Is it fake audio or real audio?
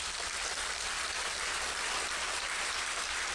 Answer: fake